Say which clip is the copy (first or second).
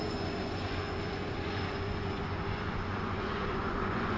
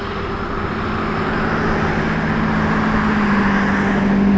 first